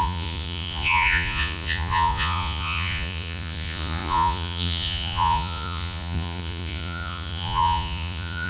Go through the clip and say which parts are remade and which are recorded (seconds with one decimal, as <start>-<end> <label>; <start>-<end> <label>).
0.0-8.5 remade